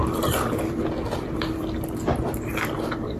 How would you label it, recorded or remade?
remade